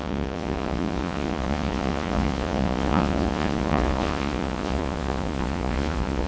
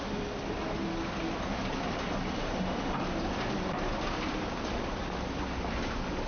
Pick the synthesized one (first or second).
first